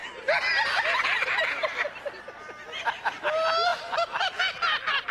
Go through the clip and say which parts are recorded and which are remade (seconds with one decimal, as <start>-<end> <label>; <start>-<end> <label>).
0.0-5.1 recorded